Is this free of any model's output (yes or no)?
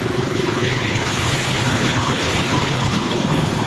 no